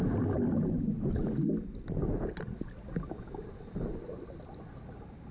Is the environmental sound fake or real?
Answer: real